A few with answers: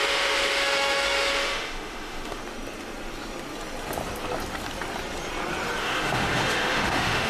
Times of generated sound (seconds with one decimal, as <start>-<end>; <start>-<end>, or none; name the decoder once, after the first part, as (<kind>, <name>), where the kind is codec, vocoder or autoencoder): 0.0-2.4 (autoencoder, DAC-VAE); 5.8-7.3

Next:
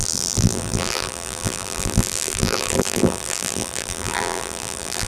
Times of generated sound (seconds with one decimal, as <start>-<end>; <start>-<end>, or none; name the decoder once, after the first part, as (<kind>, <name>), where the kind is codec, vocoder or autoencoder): 0.0-5.1 (vocoder, BigVGAN v2)

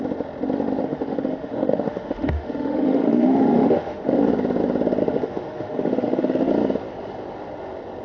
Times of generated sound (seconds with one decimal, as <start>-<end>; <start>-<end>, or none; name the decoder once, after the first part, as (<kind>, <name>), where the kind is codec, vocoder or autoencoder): 0.8-4.2 (autoencoder, DAC-VAE); 5.0-6.5

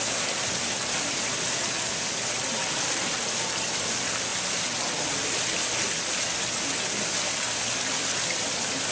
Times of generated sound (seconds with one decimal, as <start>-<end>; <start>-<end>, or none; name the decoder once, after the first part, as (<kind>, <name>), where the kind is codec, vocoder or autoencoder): none

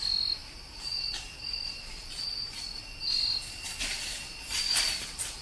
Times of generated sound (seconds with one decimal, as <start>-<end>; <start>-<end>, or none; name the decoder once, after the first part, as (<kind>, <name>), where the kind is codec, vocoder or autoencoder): none